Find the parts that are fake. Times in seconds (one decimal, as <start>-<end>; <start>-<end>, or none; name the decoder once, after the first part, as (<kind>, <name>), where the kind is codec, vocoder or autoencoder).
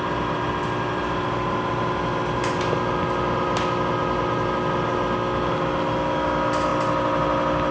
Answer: none